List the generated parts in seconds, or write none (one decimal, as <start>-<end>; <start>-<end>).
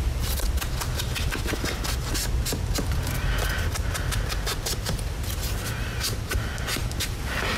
none